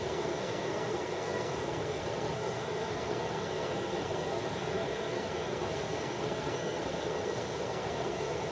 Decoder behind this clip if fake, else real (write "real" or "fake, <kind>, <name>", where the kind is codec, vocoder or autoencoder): fake, codec, SNAC